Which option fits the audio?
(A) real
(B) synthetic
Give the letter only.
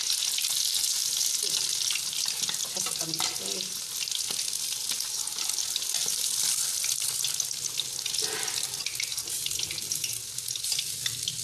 A